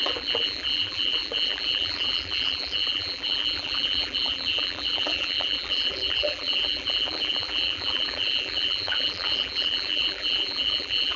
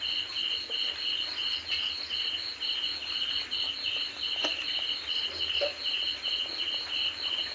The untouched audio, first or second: second